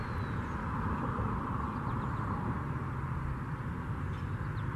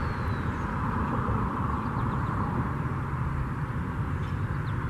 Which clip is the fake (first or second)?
second